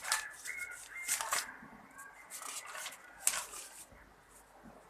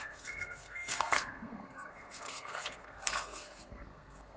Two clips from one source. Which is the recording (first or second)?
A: first